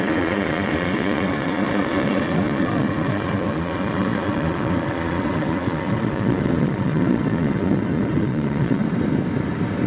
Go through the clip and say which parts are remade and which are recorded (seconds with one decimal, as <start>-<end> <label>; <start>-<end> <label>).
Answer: 0.0-8.8 remade; 8.8-9.9 recorded